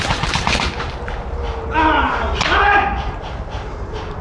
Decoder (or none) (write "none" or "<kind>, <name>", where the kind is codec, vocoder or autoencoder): vocoder, BigVGAN v2